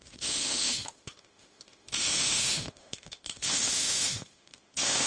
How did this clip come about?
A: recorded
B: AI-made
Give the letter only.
B